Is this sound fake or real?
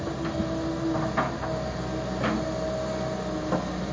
real